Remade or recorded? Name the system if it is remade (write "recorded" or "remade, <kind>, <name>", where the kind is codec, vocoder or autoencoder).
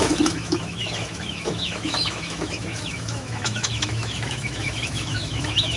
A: remade, autoencoder, DAC-VAE